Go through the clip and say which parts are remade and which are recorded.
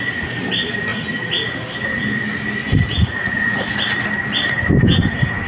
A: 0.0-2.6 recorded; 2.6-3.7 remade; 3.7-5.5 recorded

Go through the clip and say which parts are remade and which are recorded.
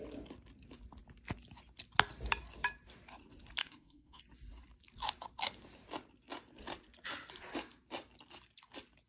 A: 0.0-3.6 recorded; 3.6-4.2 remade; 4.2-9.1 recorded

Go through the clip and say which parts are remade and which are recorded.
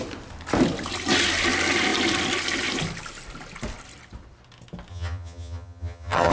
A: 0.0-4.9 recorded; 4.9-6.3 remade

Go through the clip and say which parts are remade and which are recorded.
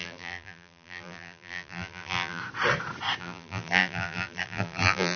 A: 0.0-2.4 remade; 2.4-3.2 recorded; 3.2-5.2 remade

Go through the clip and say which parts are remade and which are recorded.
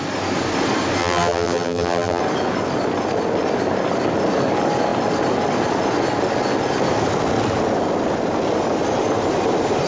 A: 0.0-1.0 recorded; 1.0-2.2 remade; 2.2-9.9 recorded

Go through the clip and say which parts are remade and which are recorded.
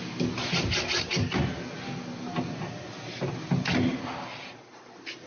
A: 0.0-5.3 recorded